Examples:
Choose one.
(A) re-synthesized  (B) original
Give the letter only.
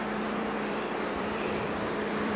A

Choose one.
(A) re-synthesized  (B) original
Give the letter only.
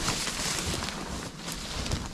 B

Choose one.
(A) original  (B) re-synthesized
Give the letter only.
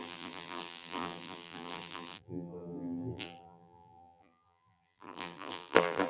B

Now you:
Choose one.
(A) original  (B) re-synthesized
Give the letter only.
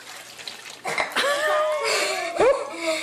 A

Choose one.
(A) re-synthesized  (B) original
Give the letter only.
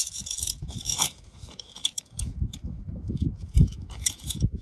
A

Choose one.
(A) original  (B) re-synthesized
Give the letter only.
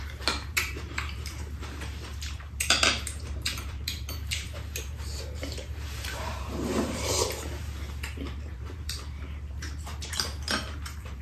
B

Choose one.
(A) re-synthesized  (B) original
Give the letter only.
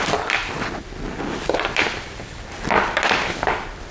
A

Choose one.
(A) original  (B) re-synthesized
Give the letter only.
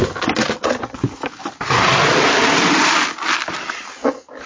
A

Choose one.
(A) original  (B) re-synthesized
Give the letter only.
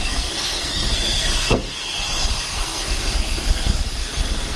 B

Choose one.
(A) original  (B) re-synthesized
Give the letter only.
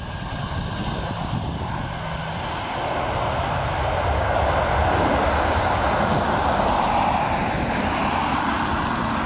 A